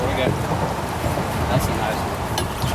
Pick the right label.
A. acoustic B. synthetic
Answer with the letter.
A